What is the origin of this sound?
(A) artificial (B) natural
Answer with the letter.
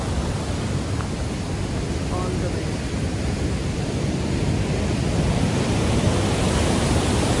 B